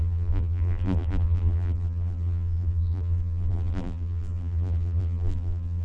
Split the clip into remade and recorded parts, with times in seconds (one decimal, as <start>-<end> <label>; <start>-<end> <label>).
0.0-5.8 remade